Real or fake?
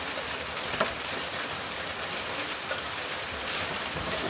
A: real